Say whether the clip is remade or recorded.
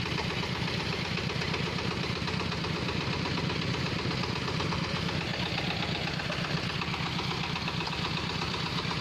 recorded